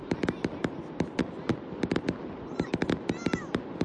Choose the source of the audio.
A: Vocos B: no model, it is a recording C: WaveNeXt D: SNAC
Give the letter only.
B